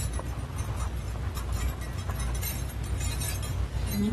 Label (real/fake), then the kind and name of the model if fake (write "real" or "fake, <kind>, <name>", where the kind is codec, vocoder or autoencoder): real